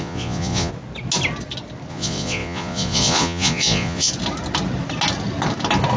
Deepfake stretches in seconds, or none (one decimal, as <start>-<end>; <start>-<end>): 0.0-0.7; 1.9-4.1